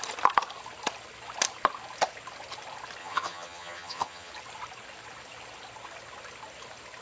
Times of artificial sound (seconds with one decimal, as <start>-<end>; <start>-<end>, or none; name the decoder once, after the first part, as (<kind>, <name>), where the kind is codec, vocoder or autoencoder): 3.0-4.3 (vocoder, HiFi-GAN)